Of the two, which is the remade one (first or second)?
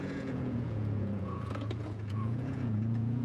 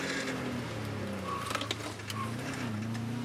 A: first